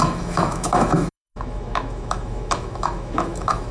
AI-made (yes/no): yes